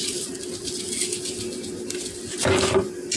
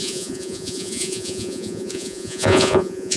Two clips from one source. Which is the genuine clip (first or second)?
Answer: first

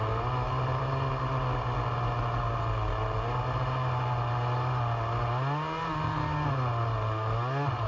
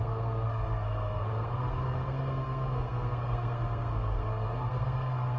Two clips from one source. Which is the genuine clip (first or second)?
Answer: first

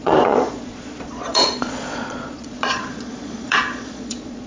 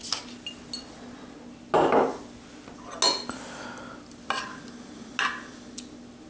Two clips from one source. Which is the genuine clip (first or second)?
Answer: second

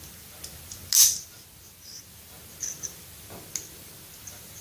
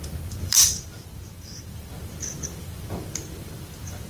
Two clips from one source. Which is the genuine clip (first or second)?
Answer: first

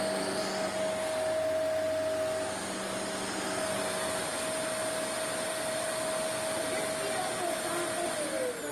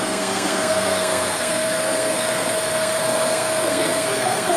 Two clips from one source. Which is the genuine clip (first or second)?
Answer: first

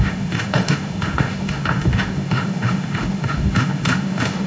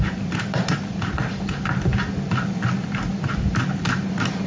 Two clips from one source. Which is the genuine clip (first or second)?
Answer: second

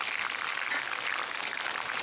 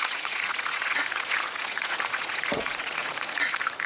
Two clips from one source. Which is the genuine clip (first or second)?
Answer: first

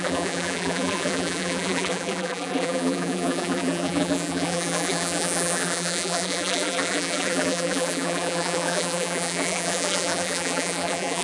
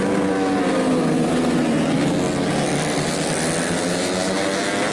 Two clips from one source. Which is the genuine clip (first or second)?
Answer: second